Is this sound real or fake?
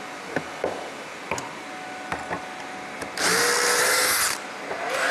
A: real